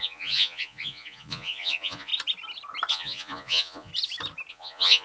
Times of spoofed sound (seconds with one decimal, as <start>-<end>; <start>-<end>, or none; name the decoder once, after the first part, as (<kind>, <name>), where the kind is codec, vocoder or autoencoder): 0.0-2.1 (vocoder, Vocos); 2.9-3.9; 4.5-5.0